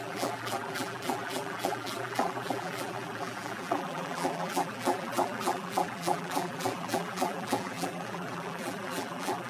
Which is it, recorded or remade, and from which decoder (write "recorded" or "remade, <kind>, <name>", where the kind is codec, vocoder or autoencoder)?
remade, vocoder, BigVGAN v2